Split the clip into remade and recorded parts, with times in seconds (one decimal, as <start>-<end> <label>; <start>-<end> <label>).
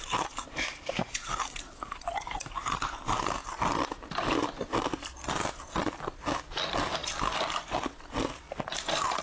0.0-9.2 recorded